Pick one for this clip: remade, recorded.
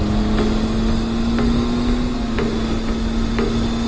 recorded